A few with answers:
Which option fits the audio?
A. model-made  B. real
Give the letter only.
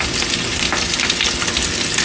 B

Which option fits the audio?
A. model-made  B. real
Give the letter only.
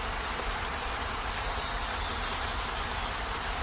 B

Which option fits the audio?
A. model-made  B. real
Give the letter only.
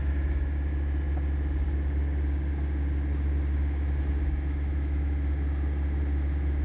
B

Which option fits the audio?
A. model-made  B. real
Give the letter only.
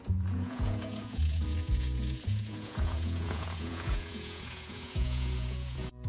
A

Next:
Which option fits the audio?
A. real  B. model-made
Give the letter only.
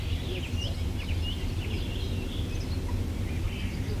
A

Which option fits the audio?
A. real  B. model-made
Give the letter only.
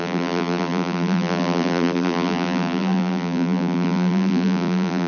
B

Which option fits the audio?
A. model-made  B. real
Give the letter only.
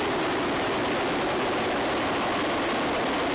B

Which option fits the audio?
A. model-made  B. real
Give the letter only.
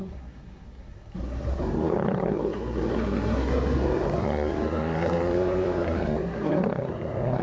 A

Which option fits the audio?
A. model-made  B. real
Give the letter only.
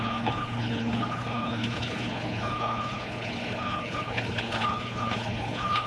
A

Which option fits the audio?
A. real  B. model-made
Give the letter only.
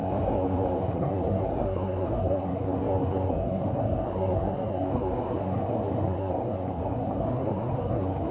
B